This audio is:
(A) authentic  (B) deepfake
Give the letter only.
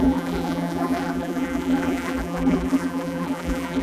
B